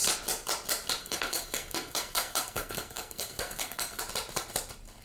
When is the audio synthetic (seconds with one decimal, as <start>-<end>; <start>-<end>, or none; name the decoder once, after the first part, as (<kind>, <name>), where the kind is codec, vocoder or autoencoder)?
1.0-4.0 (codec, SNAC)